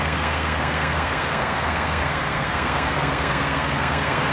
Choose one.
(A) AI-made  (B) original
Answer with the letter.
A